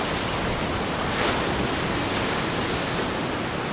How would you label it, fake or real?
real